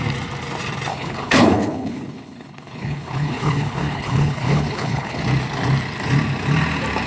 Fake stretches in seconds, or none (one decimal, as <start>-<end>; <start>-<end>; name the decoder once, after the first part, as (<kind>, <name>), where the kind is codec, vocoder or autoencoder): 0.9-5.2 (codec, HILCodec)